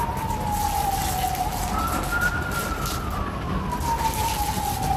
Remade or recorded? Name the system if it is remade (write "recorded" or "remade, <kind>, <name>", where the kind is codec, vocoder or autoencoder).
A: recorded